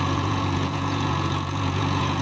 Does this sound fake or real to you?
fake